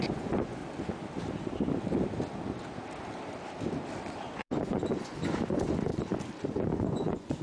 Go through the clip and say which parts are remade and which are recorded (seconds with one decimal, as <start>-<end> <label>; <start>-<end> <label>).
0.0-0.6 remade; 0.6-4.3 recorded; 4.3-5.9 remade; 5.9-6.5 recorded; 6.5-7.4 remade